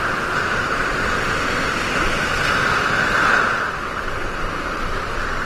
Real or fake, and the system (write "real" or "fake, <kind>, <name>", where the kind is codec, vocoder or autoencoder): real